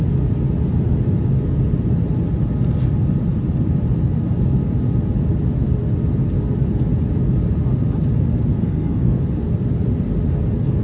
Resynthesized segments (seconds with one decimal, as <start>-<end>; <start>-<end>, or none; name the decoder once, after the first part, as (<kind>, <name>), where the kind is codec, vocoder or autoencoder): 8.6-9.2 (codec, SNAC)